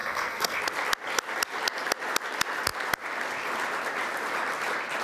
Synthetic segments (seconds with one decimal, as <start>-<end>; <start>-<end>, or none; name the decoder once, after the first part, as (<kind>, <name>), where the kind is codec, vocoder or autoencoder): 0.0-0.6 (codec, SNAC)

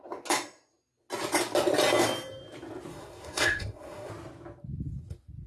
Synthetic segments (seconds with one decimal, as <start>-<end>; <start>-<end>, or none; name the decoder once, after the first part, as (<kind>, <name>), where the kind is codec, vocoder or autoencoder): 2.9-4.1 (codec, SNAC)

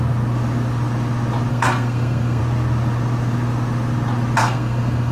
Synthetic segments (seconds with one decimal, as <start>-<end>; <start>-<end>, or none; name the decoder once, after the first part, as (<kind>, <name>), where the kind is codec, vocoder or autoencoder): 1.5-2.4 (codec, SNAC); 4.4-5.1

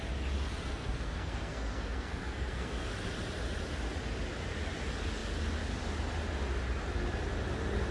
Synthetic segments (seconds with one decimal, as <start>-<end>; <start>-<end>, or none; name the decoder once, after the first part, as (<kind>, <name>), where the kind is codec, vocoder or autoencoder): 0.7-2.9 (codec, SNAC)

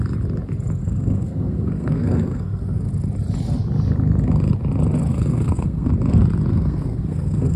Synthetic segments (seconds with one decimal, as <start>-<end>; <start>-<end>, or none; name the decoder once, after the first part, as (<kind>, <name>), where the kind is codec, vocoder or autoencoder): 0.8-2.9 (codec, SNAC); 5.1-5.9; 6.5-7.6

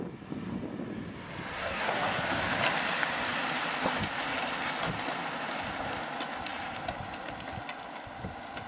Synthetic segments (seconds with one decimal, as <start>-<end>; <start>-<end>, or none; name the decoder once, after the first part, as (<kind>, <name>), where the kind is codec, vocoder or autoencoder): 1.5-2.2 (codec, SNAC)

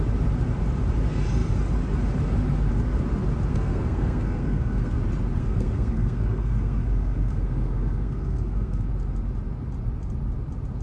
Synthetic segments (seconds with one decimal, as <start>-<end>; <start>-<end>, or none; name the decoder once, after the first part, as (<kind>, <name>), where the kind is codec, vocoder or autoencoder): 3.5-5.0 (codec, SNAC); 5.4-8.9

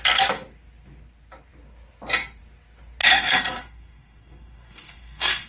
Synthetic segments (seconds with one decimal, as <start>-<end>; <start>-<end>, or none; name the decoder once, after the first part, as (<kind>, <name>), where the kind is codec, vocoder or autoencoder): 3.0-5.5 (codec, SNAC)